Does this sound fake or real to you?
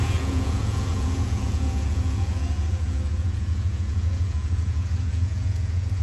fake